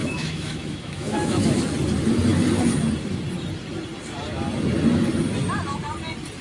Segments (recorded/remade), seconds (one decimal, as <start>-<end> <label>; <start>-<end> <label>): 0.0-1.6 remade; 1.6-6.4 recorded

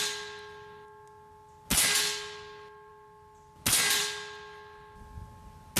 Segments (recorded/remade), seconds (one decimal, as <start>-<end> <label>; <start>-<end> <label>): 0.0-5.8 recorded

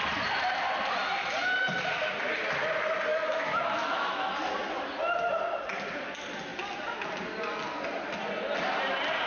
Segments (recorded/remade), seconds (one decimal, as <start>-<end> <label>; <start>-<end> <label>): 0.0-3.1 recorded; 3.1-4.3 remade; 4.3-9.3 recorded

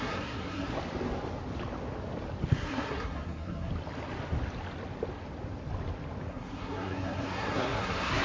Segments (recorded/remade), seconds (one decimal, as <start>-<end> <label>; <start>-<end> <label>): 0.0-0.7 remade; 0.7-2.5 recorded; 2.5-3.7 remade; 3.7-6.3 recorded; 6.3-8.2 remade

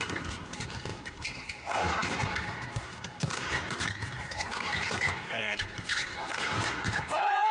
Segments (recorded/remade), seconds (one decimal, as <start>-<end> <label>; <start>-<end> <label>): 0.0-7.5 remade

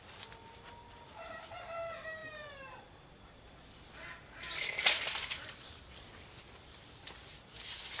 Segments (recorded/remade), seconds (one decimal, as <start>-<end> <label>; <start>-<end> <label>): 0.0-8.0 recorded